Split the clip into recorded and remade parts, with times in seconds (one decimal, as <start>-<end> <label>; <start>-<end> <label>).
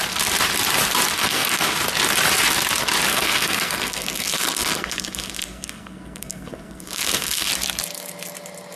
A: 0.0-1.2 recorded; 1.2-1.7 remade; 1.7-3.1 recorded; 3.1-7.5 remade; 7.5-8.8 recorded